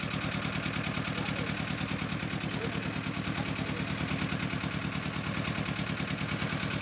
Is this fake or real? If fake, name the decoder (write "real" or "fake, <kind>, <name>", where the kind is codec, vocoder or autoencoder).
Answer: real